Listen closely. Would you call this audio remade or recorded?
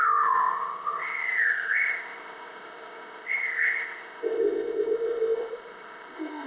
remade